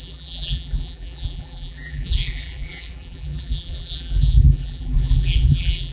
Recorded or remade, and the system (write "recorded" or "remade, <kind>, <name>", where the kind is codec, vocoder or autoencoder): remade, vocoder, BigVGAN v2